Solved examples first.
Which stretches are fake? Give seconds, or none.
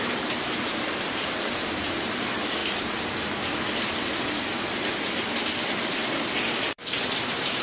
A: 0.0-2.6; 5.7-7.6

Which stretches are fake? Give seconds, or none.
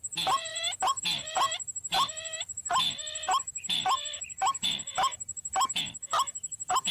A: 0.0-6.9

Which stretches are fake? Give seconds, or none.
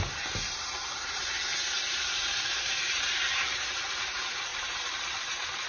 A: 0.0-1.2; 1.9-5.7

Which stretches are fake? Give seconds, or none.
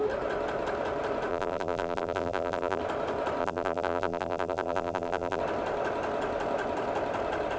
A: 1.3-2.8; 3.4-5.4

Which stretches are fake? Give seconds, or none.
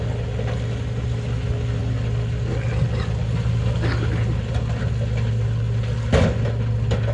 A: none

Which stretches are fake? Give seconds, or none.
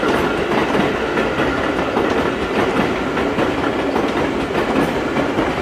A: none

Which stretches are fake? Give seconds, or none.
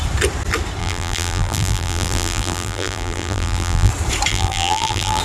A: 0.8-3.9; 4.3-5.2